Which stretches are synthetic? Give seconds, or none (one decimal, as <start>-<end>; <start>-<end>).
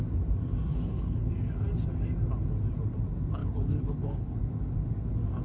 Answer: 0.7-1.3; 3.4-4.4